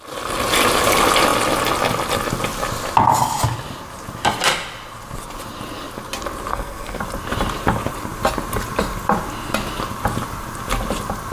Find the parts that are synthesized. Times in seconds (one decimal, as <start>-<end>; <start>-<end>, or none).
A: 6.5-7.0